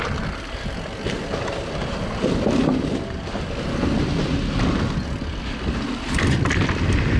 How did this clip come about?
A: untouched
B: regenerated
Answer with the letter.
A